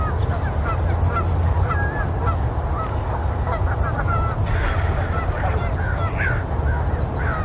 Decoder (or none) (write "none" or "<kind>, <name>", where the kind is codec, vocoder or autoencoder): none